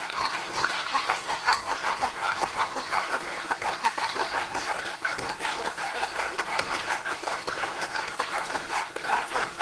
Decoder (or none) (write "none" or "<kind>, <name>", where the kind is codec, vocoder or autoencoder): codec, SNAC